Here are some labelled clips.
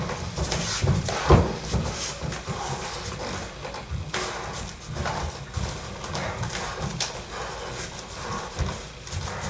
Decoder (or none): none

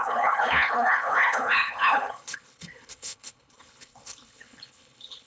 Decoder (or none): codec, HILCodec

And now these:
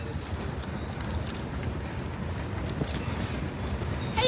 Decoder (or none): none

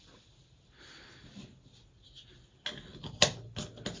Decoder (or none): none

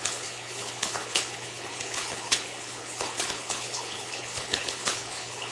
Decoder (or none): codec, HILCodec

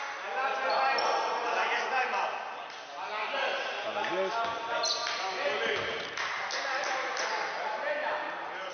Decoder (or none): none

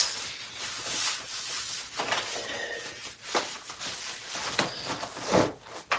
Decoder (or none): none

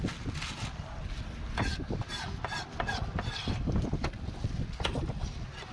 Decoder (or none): none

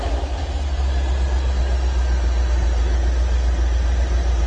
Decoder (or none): none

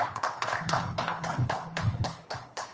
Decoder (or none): codec, HILCodec